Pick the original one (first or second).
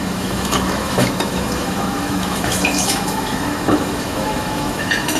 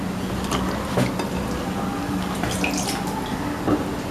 second